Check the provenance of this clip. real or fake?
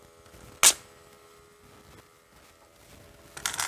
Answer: real